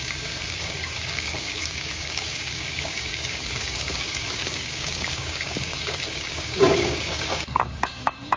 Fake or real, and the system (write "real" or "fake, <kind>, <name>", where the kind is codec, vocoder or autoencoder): fake, codec, DAC